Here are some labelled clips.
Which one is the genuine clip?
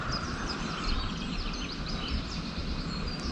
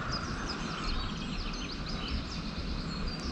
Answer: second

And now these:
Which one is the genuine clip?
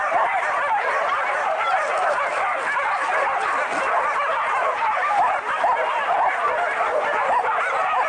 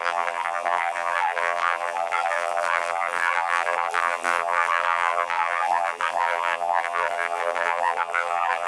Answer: first